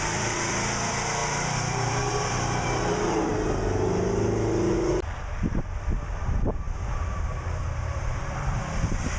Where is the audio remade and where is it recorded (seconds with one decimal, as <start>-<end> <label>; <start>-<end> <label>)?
0.0-3.3 remade; 3.3-4.9 recorded; 4.9-9.2 remade